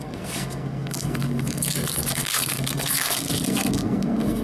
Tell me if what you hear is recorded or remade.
remade